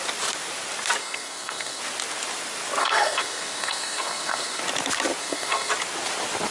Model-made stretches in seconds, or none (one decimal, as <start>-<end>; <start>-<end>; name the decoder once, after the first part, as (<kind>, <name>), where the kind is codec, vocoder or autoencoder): 1.0-1.8 (codec, SNAC); 2.8-4.6; 5.2-5.7